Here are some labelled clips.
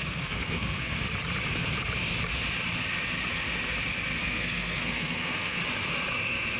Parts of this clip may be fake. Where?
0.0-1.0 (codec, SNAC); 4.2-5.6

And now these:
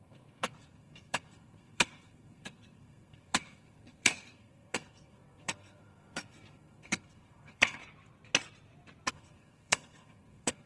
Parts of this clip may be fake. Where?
0.0-7.8 (codec, SNAC); 9.1-10.7

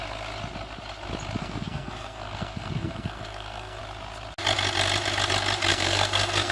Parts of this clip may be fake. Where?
1.4-3.8 (codec, SNAC); 5.7-6.5

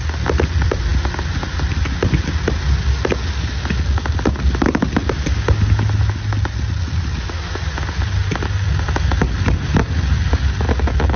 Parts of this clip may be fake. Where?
none

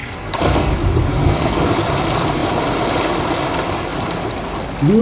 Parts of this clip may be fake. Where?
0.0-0.7 (codec, SNAC); 1.1-1.7

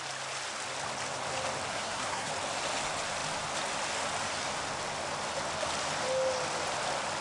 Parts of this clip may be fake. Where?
1.7-2.3 (codec, SNAC)

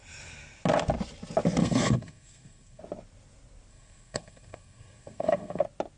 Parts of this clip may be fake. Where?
1.6-2.8 (codec, SNAC); 3.7-5.6

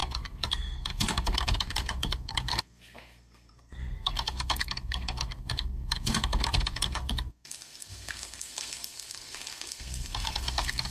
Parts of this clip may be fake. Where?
0.0-10.9 (codec, SNAC)